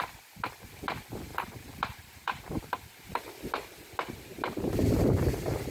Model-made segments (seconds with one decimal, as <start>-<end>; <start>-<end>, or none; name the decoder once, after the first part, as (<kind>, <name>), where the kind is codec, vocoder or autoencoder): 1.3-3.2 (vocoder, BigVGAN v2)

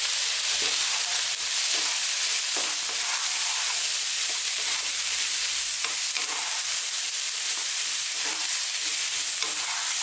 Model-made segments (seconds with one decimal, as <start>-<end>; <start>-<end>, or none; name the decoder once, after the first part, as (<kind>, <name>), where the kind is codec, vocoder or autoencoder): 4.2-8.3 (vocoder, BigVGAN v2)

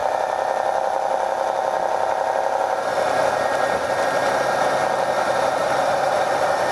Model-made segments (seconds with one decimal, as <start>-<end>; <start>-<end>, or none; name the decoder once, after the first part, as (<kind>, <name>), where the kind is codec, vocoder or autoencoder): 5.6-6.7 (vocoder, BigVGAN v2)

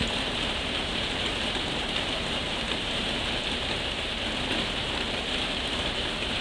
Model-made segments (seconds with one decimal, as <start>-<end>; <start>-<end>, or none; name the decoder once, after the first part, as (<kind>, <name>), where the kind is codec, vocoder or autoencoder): 0.0-4.1 (vocoder, BigVGAN v2); 4.8-6.4